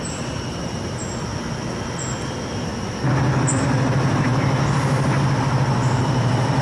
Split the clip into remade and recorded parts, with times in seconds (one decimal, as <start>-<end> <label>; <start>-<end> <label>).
0.0-1.3 remade; 1.3-2.3 recorded; 2.3-2.7 remade; 2.7-3.6 recorded; 3.6-4.3 remade; 4.3-5.4 recorded; 5.4-6.6 remade